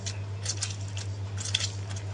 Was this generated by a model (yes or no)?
no